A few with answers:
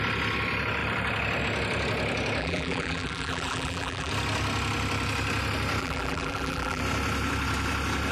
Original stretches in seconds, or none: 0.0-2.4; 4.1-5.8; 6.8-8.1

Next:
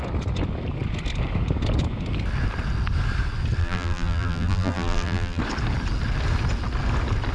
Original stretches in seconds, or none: 0.0-3.6; 5.4-7.3

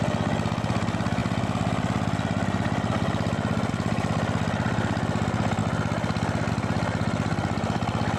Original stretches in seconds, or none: 0.0-8.2

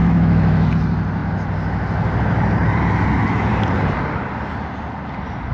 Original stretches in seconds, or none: 0.7-5.5

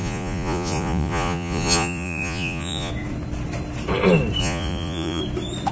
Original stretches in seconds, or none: 2.9-4.4; 5.2-5.7